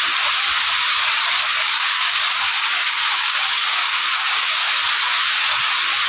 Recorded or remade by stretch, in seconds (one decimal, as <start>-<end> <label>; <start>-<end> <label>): 0.0-1.4 recorded; 1.4-4.6 remade; 4.6-6.1 recorded